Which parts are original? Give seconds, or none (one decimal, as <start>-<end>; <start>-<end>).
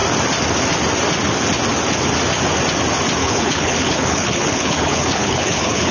0.0-3.2